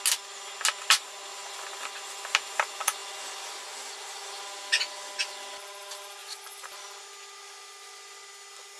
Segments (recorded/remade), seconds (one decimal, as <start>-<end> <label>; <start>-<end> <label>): 0.0-6.2 recorded; 6.2-6.8 remade; 6.8-8.8 recorded